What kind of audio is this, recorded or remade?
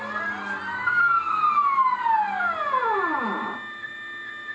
recorded